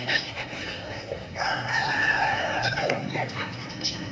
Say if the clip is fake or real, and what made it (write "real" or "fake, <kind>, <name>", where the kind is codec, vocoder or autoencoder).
fake, codec, SNAC